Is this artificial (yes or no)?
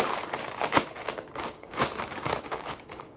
yes